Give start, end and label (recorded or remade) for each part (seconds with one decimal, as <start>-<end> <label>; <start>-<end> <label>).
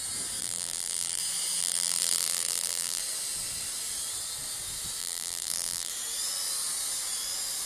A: 0.0-0.4 recorded; 0.4-1.2 remade; 1.2-1.6 recorded; 1.6-3.0 remade; 3.0-5.0 recorded; 5.0-5.9 remade; 5.9-7.7 recorded